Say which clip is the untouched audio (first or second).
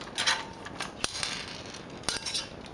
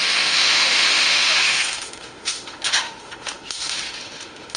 first